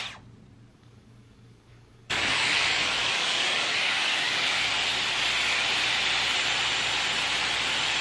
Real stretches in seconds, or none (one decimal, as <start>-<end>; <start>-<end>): 0.0-0.7; 4.7-8.0